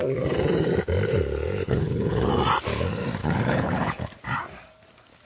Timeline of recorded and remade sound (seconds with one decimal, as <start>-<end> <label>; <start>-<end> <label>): 0.0-1.6 recorded; 1.6-2.3 remade; 2.3-3.2 recorded; 3.2-4.1 remade; 4.1-5.3 recorded